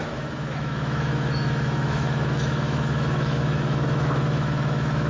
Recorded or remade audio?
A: remade